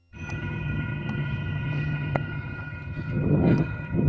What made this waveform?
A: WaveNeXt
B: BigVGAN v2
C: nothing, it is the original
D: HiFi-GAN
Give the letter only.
D